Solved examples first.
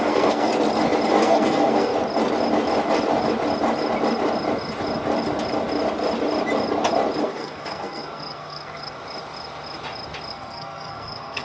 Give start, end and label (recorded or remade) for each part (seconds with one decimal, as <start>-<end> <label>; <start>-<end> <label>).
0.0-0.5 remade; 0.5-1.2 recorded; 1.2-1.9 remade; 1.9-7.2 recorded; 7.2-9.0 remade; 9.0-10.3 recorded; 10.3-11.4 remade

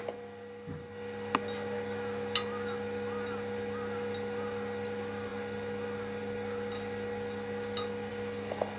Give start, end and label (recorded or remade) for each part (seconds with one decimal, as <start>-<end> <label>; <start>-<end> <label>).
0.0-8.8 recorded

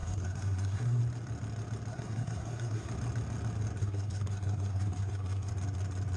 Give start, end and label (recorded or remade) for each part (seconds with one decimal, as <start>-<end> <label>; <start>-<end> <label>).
0.0-1.0 remade; 1.0-1.9 recorded; 1.9-2.9 remade; 2.9-3.8 recorded; 3.8-5.5 remade; 5.5-6.2 recorded

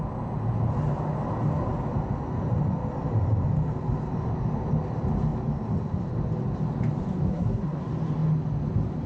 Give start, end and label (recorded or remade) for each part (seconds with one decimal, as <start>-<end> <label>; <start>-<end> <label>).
0.0-7.3 recorded; 7.3-7.8 remade; 7.8-9.1 recorded

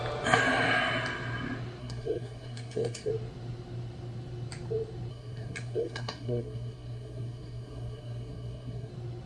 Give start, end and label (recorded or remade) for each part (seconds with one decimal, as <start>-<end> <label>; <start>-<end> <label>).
0.0-1.8 recorded; 1.8-3.1 remade; 3.1-5.1 recorded; 5.1-8.9 remade; 8.9-9.3 recorded

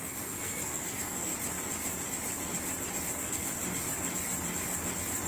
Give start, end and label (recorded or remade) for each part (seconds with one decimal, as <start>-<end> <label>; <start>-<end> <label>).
0.0-1.3 remade; 1.3-3.1 recorded; 3.1-3.6 remade; 3.6-5.3 recorded

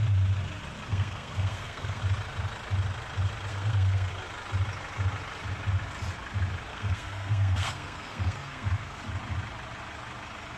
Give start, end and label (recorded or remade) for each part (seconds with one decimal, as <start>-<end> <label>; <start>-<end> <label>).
0.0-0.9 recorded; 0.9-2.0 remade; 2.0-3.5 recorded; 3.5-4.1 remade; 4.1-6.7 recorded; 6.7-9.0 remade; 9.0-10.6 recorded